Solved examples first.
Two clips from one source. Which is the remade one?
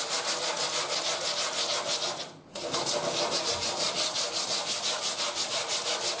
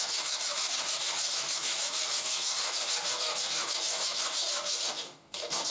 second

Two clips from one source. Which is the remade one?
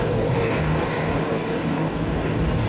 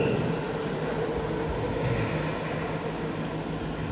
first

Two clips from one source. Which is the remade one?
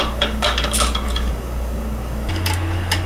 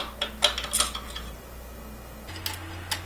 first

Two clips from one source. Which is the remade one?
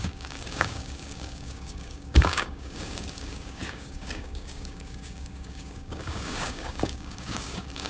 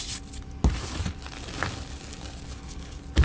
first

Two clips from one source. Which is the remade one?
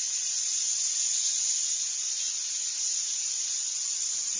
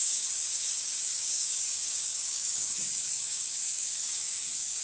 second